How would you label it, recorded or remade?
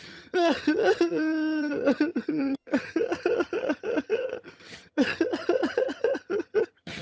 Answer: remade